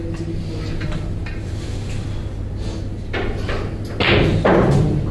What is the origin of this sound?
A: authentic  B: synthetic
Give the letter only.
A